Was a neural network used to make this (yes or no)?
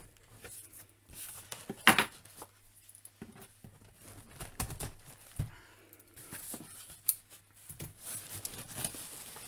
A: no